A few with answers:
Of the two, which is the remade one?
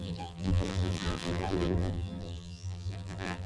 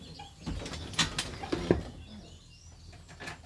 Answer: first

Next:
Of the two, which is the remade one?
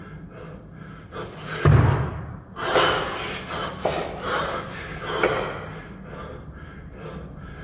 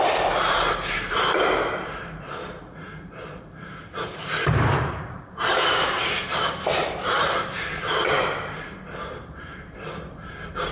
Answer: second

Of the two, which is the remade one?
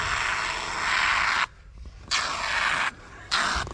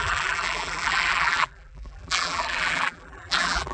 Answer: second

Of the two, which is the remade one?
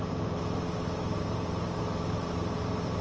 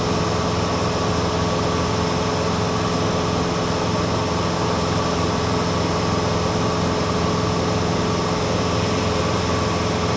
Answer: first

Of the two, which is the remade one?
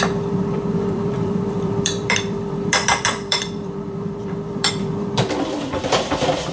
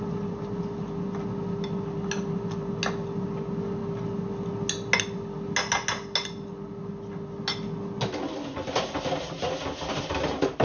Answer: first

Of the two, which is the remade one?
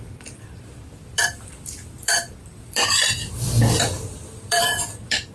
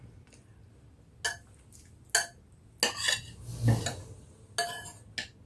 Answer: first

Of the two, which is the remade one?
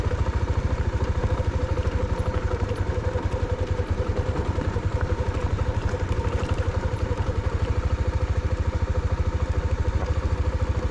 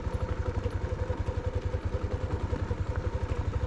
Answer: first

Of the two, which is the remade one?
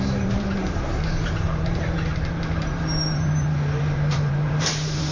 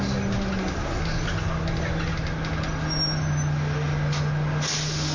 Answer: first